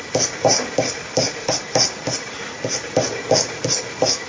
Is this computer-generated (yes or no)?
yes